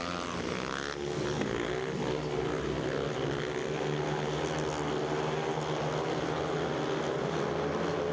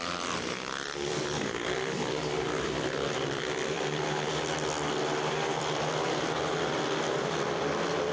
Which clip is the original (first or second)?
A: first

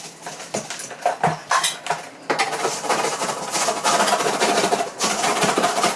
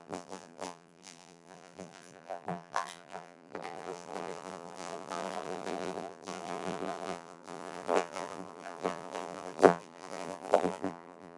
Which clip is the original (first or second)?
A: first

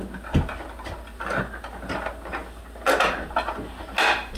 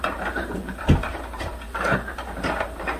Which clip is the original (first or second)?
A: first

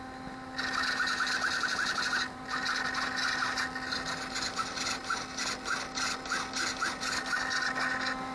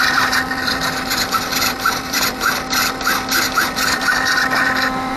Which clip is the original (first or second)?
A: first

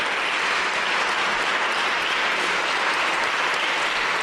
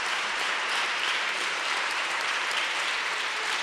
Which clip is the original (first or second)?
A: first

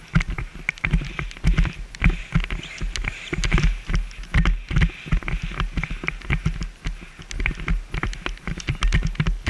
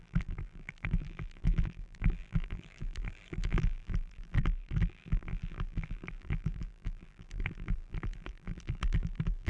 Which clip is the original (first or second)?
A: first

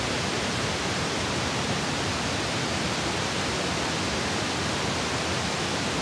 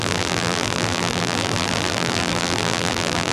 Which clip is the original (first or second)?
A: first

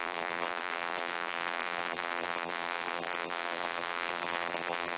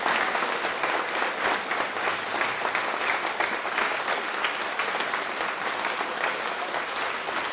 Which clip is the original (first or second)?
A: second